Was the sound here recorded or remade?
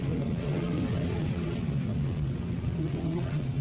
remade